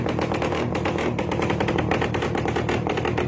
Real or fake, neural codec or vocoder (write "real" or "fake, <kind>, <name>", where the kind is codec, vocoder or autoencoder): real